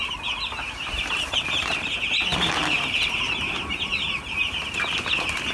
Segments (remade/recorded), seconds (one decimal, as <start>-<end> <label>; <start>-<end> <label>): 0.0-5.5 recorded